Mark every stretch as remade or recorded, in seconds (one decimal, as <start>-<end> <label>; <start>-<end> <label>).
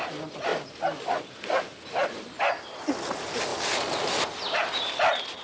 0.0-5.4 recorded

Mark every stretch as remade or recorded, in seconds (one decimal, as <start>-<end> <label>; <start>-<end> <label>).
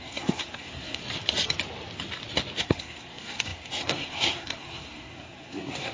0.0-1.0 remade; 1.0-2.6 recorded; 2.6-5.9 remade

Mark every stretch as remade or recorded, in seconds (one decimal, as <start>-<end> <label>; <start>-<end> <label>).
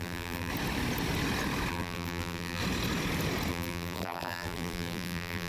0.0-0.5 remade; 0.5-1.7 recorded; 1.7-2.6 remade; 2.6-3.5 recorded; 3.5-5.5 remade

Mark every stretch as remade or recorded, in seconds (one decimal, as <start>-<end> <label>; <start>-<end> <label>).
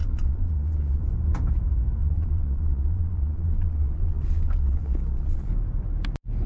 0.0-1.0 remade; 1.0-2.0 recorded; 2.0-5.5 remade; 5.5-6.5 recorded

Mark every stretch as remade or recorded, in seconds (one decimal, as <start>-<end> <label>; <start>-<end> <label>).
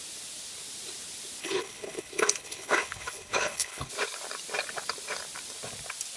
0.0-1.4 recorded; 1.4-3.9 remade; 3.9-6.2 recorded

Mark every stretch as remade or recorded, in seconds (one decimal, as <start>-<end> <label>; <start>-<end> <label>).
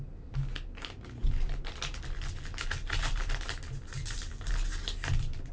0.0-5.5 recorded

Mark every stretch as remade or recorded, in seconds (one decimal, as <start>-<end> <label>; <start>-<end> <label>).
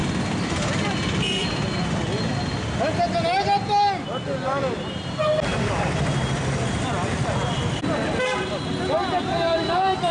0.0-0.7 remade; 0.7-1.4 recorded; 1.4-2.0 remade; 2.0-5.5 recorded; 5.5-10.1 remade